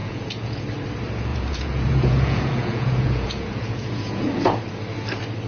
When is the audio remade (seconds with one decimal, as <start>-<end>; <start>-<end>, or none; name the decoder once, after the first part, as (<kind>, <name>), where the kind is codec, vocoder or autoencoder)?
0.0-0.6 (vocoder, Vocos); 1.3-4.6